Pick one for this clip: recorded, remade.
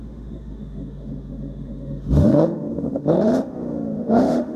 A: remade